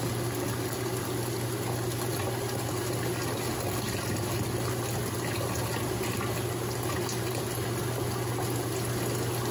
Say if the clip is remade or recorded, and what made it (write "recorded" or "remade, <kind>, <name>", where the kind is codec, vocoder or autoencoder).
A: recorded